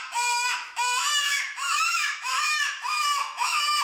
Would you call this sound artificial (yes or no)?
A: yes